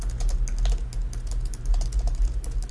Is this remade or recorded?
recorded